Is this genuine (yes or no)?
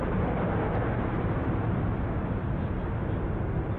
yes